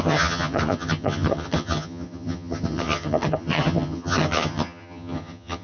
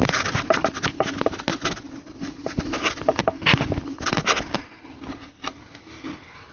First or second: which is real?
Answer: second